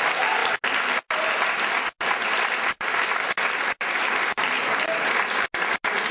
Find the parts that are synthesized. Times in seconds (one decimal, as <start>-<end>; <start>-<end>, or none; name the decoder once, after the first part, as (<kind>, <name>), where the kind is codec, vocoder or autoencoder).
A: none